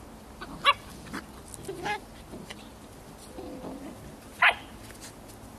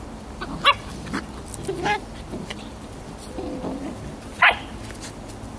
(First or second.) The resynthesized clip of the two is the second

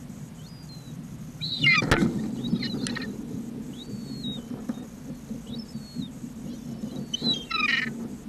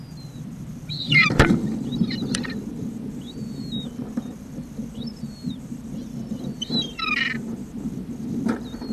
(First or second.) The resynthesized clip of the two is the second